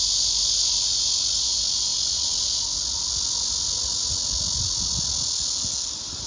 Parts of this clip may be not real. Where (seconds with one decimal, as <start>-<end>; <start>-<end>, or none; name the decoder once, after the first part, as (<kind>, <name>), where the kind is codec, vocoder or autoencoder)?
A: none